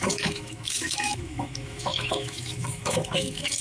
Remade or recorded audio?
remade